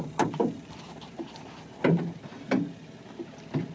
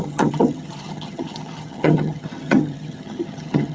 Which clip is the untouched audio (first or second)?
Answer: first